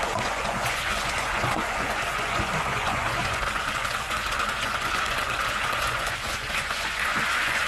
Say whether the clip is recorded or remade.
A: remade